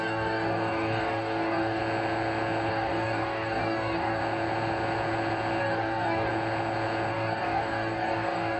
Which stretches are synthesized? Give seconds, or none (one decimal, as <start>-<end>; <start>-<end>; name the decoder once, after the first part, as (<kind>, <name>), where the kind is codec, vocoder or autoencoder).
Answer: 0.0-1.8 (codec, DAC); 2.7-4.2; 5.6-6.3; 7.1-8.6